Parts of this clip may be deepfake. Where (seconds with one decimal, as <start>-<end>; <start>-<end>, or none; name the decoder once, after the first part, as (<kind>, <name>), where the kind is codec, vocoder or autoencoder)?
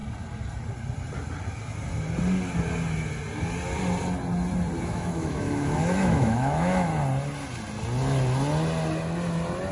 4.8-6.9 (autoencoder, DAC-VAE)